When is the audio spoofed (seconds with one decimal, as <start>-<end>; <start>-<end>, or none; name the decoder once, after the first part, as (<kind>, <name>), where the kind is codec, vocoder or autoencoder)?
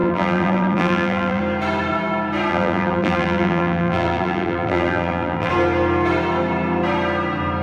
0.0-1.4 (vocoder, BigVGAN v2); 2.5-5.5